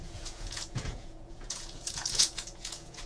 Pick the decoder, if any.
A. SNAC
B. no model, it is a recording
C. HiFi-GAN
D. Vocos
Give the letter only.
D